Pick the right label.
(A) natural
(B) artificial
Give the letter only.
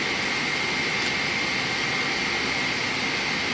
A